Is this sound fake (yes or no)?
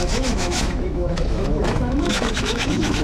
yes